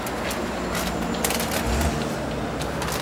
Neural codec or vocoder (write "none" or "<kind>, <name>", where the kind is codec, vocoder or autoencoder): none